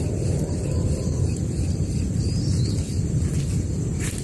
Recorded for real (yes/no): no